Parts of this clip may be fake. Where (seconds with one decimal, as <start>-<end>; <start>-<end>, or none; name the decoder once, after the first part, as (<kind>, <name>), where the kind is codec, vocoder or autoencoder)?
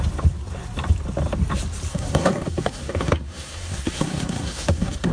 1.9-5.1 (codec, SNAC)